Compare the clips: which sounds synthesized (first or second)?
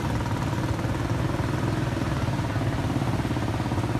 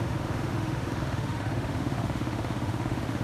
second